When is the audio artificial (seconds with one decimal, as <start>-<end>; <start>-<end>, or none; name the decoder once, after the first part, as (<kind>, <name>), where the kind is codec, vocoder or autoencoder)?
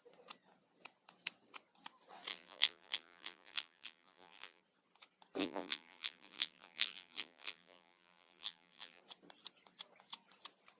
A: 2.3-4.6 (vocoder, BigVGAN v2); 5.4-9.0